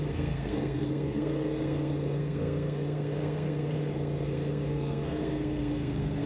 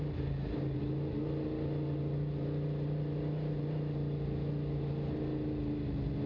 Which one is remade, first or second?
first